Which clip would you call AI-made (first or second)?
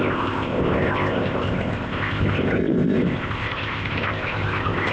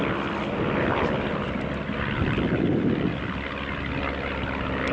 first